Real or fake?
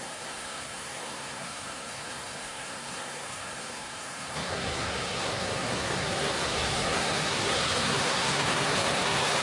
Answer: fake